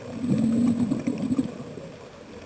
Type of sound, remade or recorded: recorded